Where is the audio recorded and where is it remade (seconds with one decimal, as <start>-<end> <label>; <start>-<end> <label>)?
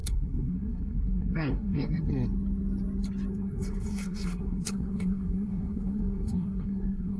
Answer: 0.0-2.1 remade; 2.1-3.3 recorded; 3.3-7.2 remade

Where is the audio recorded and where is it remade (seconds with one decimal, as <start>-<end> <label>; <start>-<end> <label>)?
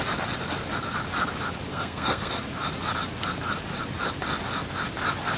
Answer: 0.0-1.7 recorded; 1.7-2.3 remade; 2.3-5.4 recorded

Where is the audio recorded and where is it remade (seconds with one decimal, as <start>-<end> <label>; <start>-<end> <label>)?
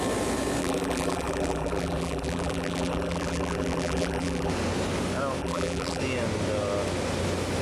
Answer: 0.0-0.6 recorded; 0.6-4.5 remade; 4.5-5.4 recorded; 5.4-6.0 remade; 6.0-7.6 recorded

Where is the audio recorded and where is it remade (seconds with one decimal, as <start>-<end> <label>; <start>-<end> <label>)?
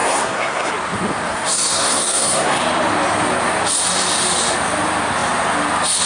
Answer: 0.0-0.7 remade; 0.7-1.3 recorded; 1.3-2.6 remade; 2.6-6.1 recorded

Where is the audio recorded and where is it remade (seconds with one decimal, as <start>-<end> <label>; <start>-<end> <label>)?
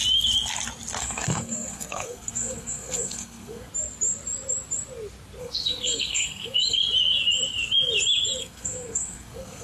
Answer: 0.0-1.0 recorded; 1.0-3.7 remade; 3.7-5.4 recorded; 5.4-6.8 remade; 6.8-8.4 recorded; 8.4-9.6 remade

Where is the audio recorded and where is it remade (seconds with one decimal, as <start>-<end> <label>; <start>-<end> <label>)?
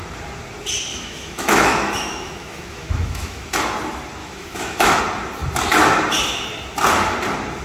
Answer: 0.0-0.9 recorded; 0.9-3.5 remade; 3.5-4.2 recorded; 4.2-5.0 remade; 5.0-7.6 recorded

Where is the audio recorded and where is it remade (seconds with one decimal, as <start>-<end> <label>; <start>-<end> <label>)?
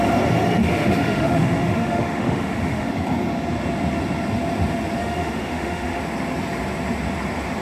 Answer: 0.0-0.6 recorded; 0.6-2.9 remade; 2.9-5.0 recorded; 5.0-6.0 remade; 6.0-7.6 recorded